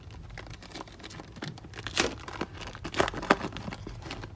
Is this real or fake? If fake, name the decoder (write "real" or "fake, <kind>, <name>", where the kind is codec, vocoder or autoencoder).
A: real